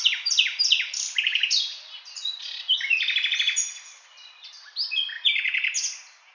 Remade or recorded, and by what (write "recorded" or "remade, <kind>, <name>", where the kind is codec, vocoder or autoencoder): recorded